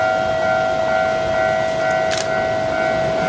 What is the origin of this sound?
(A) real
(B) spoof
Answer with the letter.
A